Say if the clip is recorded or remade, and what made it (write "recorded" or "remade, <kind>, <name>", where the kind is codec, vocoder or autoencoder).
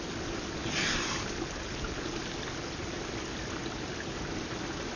recorded